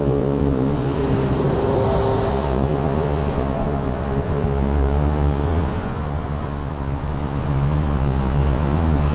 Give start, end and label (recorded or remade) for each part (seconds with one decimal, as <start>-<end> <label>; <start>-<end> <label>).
0.0-1.0 remade; 1.0-2.3 recorded; 2.3-9.1 remade